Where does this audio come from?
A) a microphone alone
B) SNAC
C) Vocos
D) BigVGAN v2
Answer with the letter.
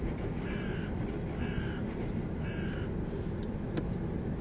A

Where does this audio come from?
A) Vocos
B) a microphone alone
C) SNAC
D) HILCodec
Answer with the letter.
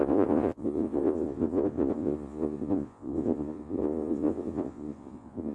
A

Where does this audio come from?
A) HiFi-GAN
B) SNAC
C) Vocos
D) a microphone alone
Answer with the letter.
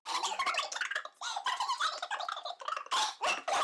D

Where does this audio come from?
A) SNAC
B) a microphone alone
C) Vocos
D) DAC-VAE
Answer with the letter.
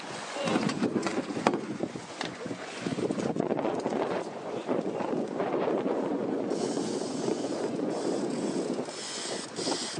C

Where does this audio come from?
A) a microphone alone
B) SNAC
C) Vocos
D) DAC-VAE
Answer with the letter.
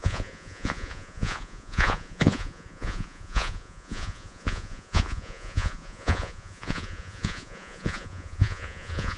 C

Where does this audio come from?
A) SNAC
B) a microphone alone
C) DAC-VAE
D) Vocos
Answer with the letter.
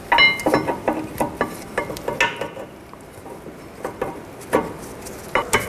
B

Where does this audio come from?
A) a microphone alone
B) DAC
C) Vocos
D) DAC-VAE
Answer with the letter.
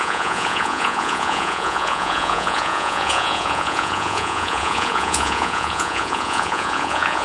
C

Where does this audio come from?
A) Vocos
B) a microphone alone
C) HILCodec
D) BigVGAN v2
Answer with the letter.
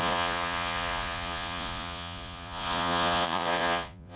A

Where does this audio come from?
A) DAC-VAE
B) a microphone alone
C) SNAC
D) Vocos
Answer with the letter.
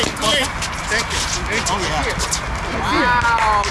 B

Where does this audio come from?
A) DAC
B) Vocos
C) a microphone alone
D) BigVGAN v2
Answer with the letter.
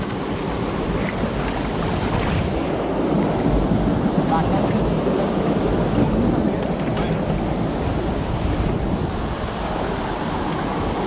C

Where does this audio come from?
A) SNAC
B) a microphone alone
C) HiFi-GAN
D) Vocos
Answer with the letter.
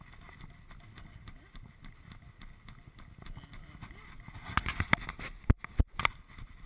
B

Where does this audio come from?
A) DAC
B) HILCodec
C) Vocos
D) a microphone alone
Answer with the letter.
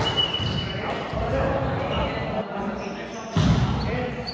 D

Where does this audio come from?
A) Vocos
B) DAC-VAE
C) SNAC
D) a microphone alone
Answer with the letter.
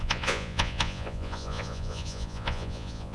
A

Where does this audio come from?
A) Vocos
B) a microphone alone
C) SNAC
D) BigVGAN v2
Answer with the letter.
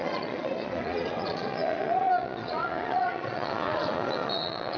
A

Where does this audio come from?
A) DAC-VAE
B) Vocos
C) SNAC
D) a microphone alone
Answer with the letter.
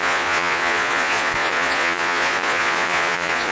B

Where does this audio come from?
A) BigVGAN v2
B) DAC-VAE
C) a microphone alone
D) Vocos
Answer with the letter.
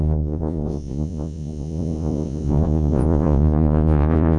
D